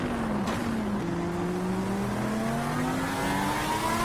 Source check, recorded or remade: recorded